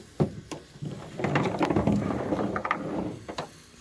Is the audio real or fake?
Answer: fake